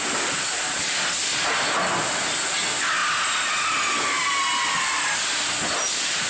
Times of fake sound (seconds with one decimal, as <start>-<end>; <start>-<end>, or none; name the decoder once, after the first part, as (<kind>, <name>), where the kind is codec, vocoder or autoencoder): 1.8-2.6 (vocoder, BigVGAN v2)